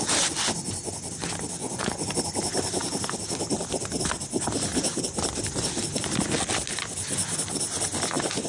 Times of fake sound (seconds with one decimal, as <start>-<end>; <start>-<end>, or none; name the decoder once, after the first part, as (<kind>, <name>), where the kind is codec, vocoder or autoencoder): 1.6-2.1 (vocoder, Vocos)